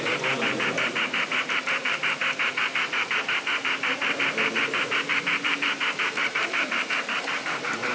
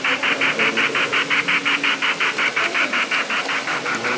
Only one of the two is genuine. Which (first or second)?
second